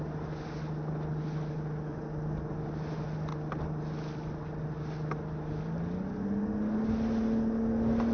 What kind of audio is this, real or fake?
real